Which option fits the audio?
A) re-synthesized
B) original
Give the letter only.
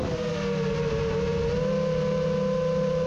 B